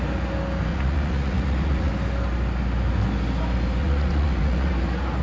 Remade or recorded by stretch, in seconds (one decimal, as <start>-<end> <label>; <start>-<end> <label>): 0.0-0.7 recorded; 0.7-1.9 remade; 1.9-3.8 recorded; 3.8-4.7 remade; 4.7-5.2 recorded